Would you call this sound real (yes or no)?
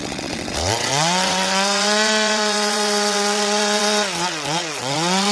no